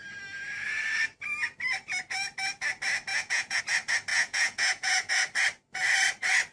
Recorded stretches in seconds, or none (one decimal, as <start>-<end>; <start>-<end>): 0.0-3.1; 3.6-4.1; 5.1-6.5